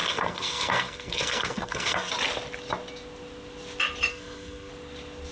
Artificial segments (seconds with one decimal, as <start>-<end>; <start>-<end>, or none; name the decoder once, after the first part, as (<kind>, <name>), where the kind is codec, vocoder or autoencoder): 0.0-2.1 (codec, SNAC); 4.1-4.7